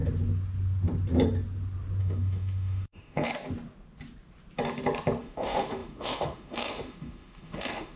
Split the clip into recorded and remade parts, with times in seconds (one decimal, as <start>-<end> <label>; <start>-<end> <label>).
0.0-2.0 recorded; 2.0-3.3 remade; 3.3-5.2 recorded; 5.2-8.0 remade